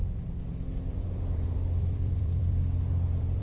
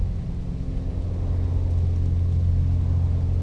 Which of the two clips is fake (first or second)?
first